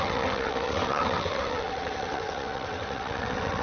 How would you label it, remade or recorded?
remade